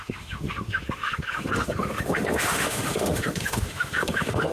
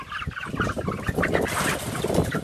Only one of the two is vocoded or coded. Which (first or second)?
first